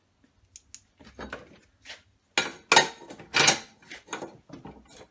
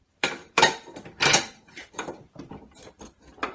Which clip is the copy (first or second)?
second